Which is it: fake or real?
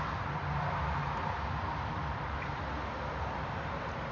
real